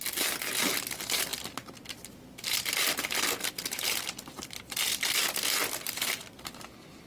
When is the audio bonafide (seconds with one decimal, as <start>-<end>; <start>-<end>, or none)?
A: 0.0-7.1